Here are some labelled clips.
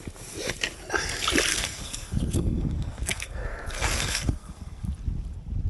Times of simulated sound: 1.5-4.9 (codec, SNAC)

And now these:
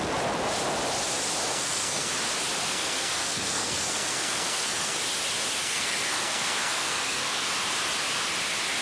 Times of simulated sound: 1.5-2.1 (codec, SNAC); 2.6-5.0; 5.6-7.5

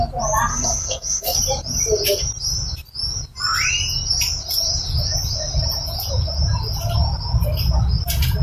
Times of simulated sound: 0.5-1.4 (codec, SNAC)